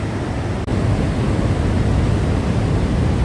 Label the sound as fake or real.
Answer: real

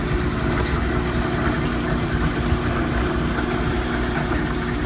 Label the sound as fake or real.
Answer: real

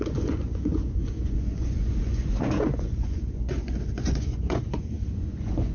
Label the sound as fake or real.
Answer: fake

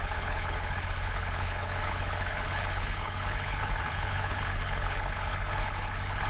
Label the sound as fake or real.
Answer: fake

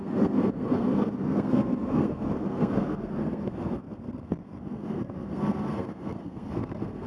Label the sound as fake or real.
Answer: fake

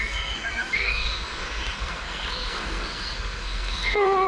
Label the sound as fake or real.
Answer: fake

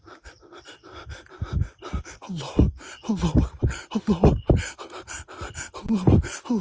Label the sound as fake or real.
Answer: real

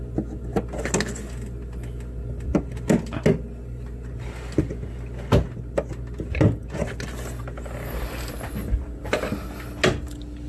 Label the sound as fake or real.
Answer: real